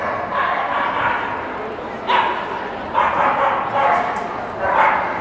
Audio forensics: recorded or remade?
recorded